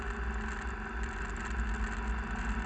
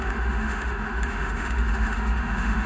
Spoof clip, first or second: second